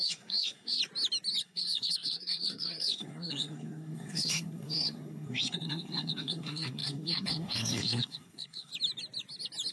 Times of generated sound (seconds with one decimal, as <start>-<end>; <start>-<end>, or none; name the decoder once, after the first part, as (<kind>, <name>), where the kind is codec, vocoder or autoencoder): 0.0-0.8 (codec, SNAC); 1.4-8.7